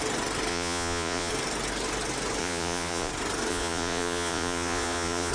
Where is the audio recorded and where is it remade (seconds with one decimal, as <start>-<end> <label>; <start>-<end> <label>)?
0.0-0.5 recorded; 0.5-1.3 remade; 1.3-2.4 recorded; 2.4-3.1 remade; 3.1-3.5 recorded; 3.5-5.3 remade